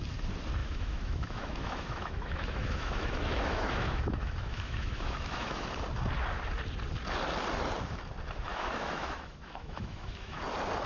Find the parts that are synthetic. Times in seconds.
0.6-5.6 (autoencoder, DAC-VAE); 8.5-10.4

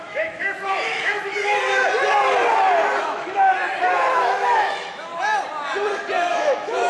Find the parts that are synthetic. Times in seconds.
0.0-1.3 (autoencoder, DAC-VAE); 3.0-3.5; 4.1-5.1; 6.3-6.9

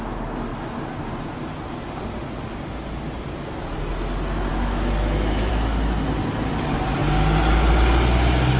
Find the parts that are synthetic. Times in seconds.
4.5-5.5 (autoencoder, DAC-VAE)